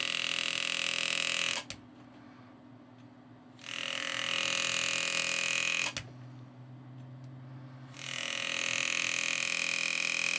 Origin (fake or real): real